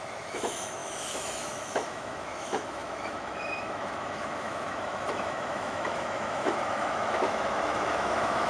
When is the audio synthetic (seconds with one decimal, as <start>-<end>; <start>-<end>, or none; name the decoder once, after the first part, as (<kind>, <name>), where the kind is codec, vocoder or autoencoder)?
0.0-8.5 (autoencoder, DAC-VAE)